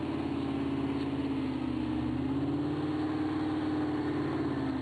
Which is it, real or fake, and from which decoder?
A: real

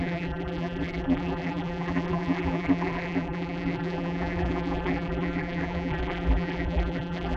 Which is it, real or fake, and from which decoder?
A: fake, vocoder, BigVGAN v2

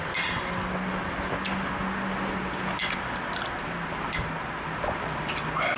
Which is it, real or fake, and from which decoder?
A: real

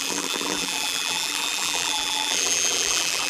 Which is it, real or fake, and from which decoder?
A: fake, vocoder, BigVGAN v2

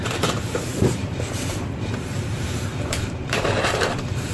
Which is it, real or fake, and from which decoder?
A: fake, vocoder, BigVGAN v2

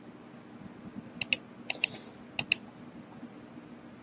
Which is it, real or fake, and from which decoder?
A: real